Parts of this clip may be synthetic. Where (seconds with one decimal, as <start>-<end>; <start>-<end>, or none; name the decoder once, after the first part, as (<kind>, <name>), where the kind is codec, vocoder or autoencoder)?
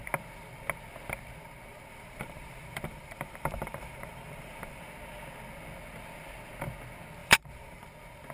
1.7-4.8 (vocoder, BigVGAN v2); 7.2-7.9